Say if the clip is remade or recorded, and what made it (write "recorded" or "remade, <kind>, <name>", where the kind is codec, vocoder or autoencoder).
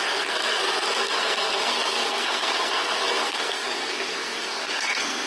remade, codec, SNAC